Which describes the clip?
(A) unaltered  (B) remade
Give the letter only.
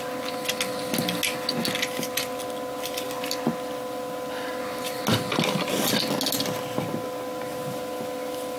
A